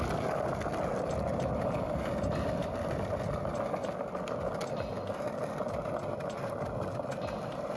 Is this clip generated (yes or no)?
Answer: no